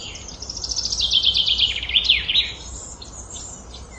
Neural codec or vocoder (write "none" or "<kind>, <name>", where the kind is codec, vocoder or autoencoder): none